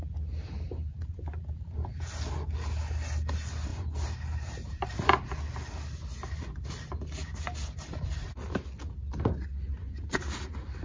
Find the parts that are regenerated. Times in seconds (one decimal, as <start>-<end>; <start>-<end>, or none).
0.9-2.0; 3.7-4.9; 9.8-10.4